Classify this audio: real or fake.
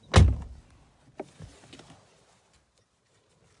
real